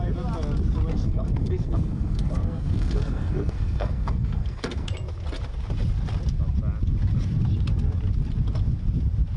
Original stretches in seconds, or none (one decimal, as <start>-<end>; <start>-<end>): 0.0-0.9; 4.9-9.4